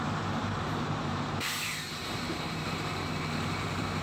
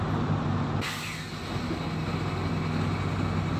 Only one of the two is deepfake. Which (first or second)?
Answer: first